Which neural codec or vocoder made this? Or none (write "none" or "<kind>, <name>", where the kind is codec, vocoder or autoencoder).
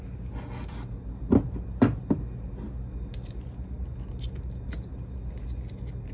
none